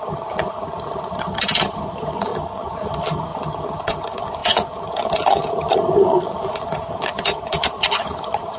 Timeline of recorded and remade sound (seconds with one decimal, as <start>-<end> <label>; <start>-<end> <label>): 0.0-8.6 remade